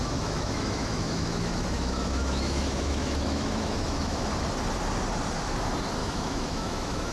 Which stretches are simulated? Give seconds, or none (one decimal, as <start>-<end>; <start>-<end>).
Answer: 0.0-4.3; 6.0-7.1